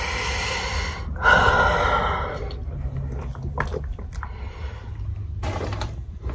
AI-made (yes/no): no